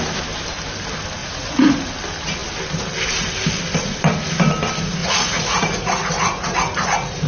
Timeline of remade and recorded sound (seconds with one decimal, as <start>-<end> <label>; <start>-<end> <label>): 0.0-1.2 recorded; 1.2-1.8 remade; 1.8-5.0 recorded; 5.0-7.3 remade